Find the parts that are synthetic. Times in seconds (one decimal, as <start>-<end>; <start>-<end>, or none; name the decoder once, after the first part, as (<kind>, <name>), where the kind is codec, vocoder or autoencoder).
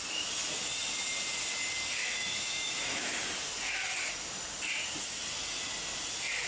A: 2.0-3.1 (autoencoder, DAC-VAE)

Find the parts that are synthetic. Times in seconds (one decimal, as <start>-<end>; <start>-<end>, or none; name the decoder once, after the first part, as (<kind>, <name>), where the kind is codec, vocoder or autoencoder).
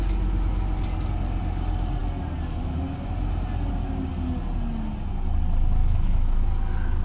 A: 5.8-6.4 (autoencoder, DAC-VAE)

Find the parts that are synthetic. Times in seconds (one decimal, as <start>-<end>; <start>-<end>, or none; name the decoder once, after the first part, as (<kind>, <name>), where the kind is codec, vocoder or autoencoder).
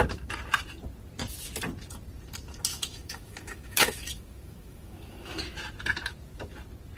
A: 2.7-5.6 (autoencoder, DAC-VAE)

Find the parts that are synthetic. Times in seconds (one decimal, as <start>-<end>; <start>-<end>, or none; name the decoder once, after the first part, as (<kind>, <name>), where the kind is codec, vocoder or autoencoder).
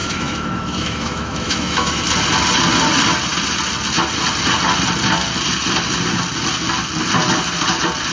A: 0.0-2.0 (autoencoder, DAC-VAE)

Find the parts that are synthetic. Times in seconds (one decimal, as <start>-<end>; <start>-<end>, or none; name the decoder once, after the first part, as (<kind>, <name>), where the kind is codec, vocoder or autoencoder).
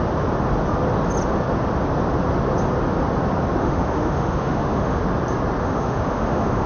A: 3.6-5.0 (autoencoder, DAC-VAE); 5.6-6.7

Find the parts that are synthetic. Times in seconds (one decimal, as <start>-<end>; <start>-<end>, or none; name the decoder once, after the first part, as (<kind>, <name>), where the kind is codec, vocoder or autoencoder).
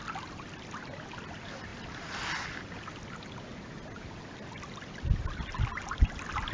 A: none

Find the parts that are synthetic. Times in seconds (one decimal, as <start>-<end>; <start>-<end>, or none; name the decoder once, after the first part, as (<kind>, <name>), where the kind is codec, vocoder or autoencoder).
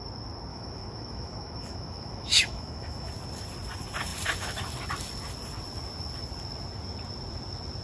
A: 0.5-3.1 (autoencoder, DAC-VAE)